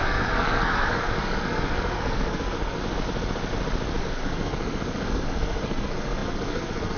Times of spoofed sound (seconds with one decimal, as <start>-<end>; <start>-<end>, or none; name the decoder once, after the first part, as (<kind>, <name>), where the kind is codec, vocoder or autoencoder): 0.0-2.8 (codec, SNAC); 4.0-7.0